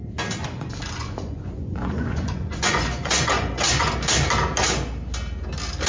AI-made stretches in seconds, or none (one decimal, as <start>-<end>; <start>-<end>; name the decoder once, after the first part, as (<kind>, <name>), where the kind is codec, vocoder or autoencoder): 0.4-3.9 (vocoder, Vocos)